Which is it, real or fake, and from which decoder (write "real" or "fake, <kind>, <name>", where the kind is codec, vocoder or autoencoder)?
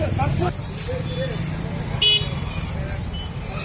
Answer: real